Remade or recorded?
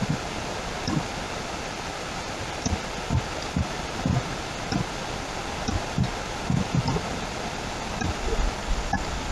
recorded